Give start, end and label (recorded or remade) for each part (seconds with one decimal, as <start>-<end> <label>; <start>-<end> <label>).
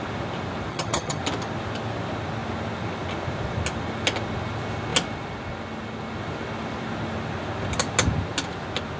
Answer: 0.0-0.7 recorded; 0.7-1.2 remade; 1.2-9.0 recorded